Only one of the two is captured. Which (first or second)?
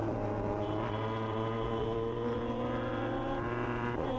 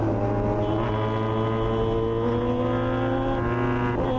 second